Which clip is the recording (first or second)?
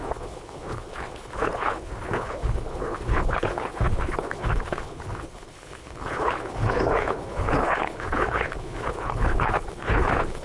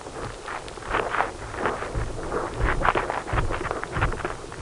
second